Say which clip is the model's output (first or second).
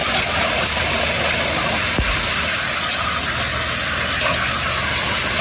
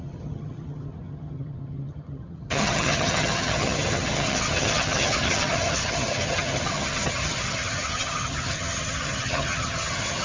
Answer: second